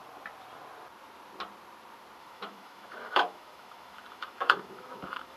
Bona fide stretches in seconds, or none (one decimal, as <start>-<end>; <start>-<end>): 0.0-2.2